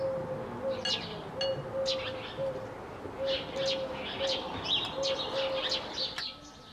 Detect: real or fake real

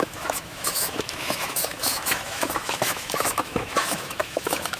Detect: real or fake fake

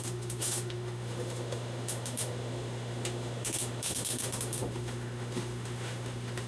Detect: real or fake fake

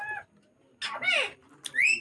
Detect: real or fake real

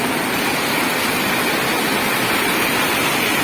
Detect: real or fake real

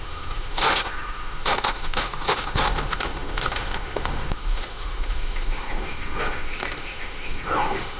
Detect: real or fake fake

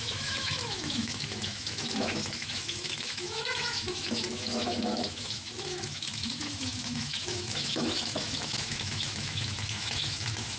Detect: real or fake fake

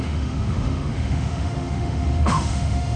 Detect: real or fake fake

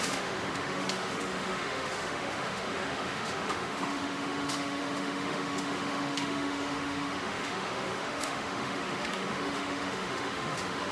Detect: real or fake fake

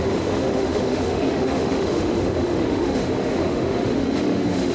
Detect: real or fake fake